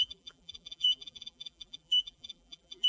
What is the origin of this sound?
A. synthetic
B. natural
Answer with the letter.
A